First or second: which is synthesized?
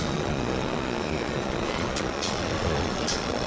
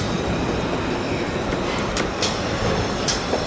first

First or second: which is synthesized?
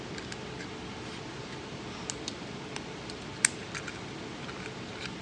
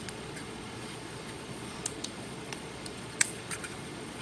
second